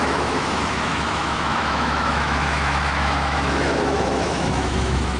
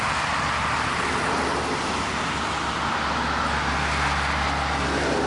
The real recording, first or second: second